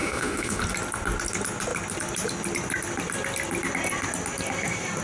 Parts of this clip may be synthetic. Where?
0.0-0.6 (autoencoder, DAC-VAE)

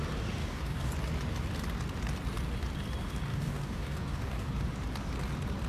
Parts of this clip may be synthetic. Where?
0.4-0.9 (codec, DAC); 3.3-4.5

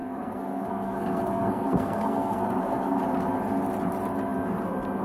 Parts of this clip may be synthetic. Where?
0.0-3.0 (codec, SNAC)

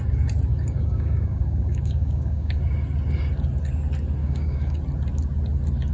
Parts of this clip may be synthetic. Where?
0.5-2.6 (codec, DAC); 4.2-4.8

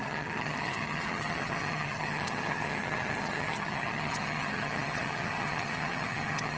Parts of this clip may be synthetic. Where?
0.0-6.6 (vocoder, HiFi-GAN)

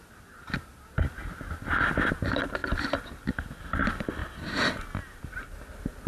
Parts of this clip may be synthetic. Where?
none

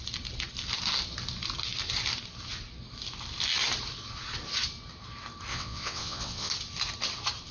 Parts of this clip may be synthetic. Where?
5.5-6.5 (vocoder, WaveNeXt)

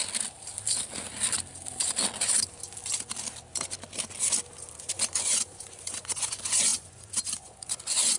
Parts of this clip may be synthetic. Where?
4.9-8.2 (vocoder, Vocos)